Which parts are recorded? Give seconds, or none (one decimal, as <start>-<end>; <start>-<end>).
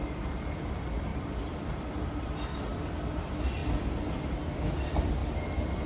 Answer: 2.5-3.2; 3.6-4.7; 5.2-5.9